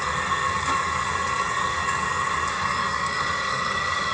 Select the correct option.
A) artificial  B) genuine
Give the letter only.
A